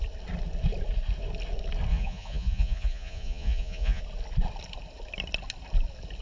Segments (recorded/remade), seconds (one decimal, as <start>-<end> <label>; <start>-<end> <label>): 0.0-1.9 recorded; 1.9-4.0 remade; 4.0-6.2 recorded